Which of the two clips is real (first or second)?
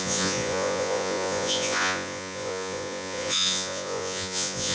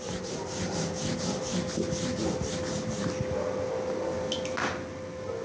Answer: second